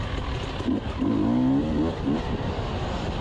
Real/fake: real